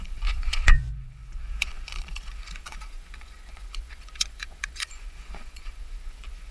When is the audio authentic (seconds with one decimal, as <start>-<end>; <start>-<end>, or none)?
none

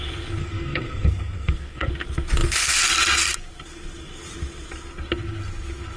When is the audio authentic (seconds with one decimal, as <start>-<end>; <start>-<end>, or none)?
0.0-0.4; 1.9-6.0

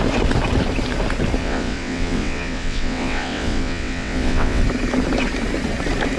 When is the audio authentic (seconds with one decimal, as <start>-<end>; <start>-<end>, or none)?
0.0-1.4; 4.6-6.2

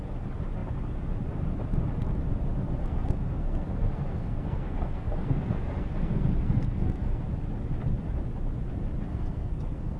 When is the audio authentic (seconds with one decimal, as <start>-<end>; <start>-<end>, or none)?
0.0-2.8; 7.2-9.1

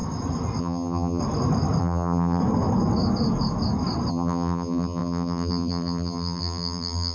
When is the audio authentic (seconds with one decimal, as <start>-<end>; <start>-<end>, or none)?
0.0-0.6; 1.2-1.8; 2.4-4.1

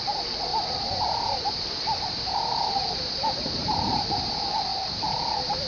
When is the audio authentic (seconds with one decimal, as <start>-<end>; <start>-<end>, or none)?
0.0-0.5; 3.9-4.7